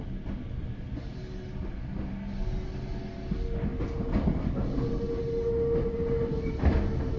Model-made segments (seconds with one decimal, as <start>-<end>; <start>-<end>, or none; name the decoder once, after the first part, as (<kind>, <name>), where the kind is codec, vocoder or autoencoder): none